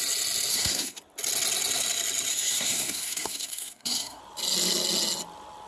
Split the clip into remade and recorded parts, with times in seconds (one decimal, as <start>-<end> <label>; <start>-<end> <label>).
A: 0.0-0.5 recorded; 0.5-1.0 remade; 1.0-2.3 recorded; 2.3-4.2 remade; 4.2-5.7 recorded